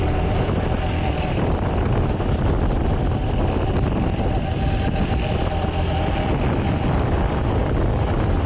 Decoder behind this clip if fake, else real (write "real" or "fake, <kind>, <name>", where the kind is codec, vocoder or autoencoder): fake, vocoder, BigVGAN v2